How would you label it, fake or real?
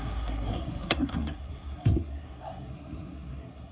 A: fake